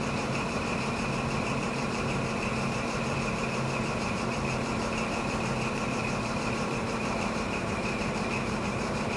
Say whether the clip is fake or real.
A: fake